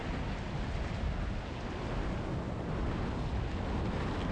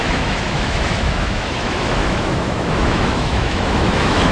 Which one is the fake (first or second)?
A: second